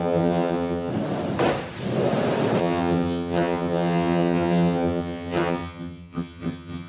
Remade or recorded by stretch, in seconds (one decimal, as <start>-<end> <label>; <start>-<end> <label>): 0.0-0.9 remade; 0.9-2.6 recorded; 2.6-6.9 remade